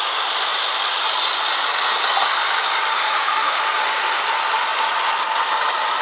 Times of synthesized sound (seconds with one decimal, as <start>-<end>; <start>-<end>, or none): 2.9-3.6